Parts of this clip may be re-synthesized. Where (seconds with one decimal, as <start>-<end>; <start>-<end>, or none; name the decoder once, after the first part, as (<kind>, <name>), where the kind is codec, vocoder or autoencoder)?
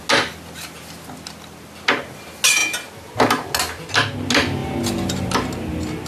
none